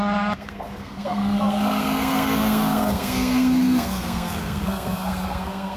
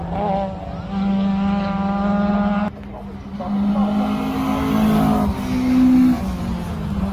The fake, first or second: first